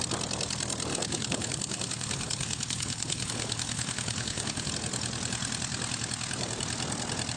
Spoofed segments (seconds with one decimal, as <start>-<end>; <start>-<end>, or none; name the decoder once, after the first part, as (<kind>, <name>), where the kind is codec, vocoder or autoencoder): 0.9-4.7 (codec, HILCodec)